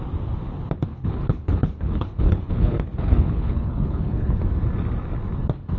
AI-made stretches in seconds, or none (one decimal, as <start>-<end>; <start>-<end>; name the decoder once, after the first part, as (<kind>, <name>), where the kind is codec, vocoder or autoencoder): 0.9-4.4 (codec, HILCodec)